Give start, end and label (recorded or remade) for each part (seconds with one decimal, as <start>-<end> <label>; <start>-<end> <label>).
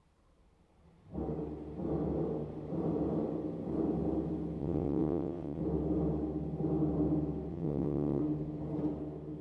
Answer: 0.0-4.6 recorded; 4.6-5.6 remade; 5.6-7.5 recorded; 7.5-8.2 remade; 8.2-9.4 recorded